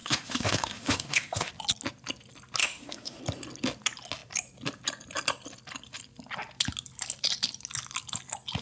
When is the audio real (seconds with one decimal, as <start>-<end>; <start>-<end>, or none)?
1.5-2.6; 3.2-8.6